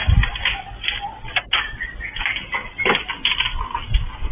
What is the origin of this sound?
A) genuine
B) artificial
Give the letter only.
A